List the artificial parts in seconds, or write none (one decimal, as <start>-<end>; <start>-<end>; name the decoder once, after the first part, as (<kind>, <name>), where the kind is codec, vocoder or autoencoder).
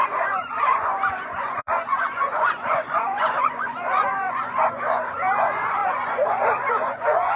0.0-7.4 (vocoder, Vocos)